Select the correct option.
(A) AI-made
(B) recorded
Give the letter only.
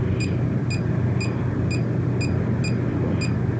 B